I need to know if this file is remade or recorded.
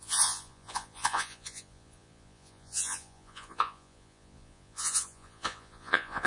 remade